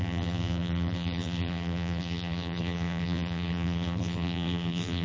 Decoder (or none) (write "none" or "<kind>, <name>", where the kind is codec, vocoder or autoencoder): vocoder, BigVGAN v2